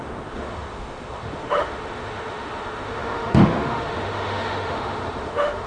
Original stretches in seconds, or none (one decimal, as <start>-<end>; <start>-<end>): none